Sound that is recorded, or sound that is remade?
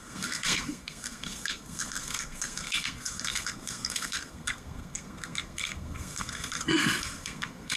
remade